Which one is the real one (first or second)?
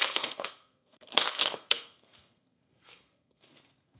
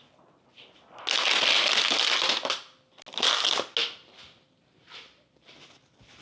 second